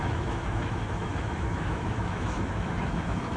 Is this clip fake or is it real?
fake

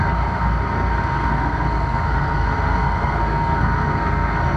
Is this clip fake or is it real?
fake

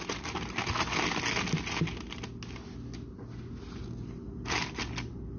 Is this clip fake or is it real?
real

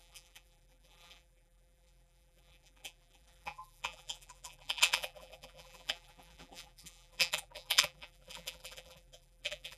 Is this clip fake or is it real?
fake